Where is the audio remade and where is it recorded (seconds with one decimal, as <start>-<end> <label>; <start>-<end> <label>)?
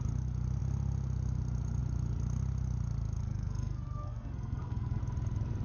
0.0-3.2 recorded; 3.2-5.0 remade; 5.0-5.6 recorded